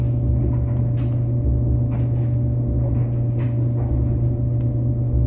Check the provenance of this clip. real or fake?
real